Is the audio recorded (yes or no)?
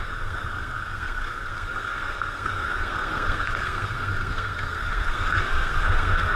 no